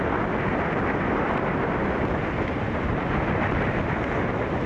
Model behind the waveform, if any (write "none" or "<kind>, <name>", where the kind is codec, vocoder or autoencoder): none